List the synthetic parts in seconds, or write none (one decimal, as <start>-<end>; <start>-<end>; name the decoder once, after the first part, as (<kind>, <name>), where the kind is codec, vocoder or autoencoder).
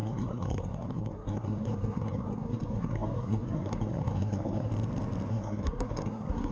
0.0-4.7 (codec, SNAC); 5.3-6.5